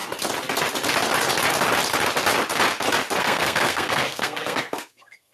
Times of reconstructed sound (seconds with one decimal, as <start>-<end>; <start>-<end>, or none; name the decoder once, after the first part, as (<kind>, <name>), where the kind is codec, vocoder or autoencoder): 3.2-5.3 (codec, SNAC)